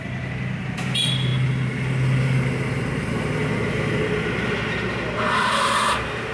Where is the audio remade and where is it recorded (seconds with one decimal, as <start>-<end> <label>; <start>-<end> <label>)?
0.0-6.3 recorded